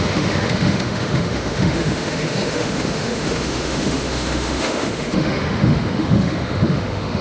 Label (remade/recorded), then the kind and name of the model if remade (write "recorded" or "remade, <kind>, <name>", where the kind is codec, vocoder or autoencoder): remade, autoencoder, DAC-VAE